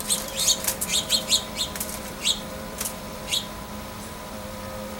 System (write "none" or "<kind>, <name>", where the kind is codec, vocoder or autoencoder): vocoder, BigVGAN v2